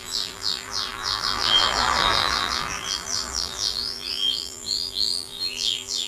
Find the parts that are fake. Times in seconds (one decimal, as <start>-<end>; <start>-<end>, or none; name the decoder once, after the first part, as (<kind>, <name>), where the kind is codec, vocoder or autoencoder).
0.0-6.1 (vocoder, BigVGAN v2)